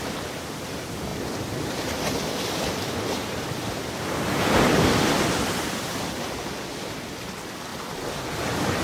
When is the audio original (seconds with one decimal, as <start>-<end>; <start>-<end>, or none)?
7.7-8.3